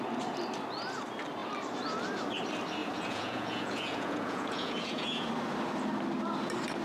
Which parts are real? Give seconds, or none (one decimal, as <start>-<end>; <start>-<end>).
0.0-2.8; 5.3-6.8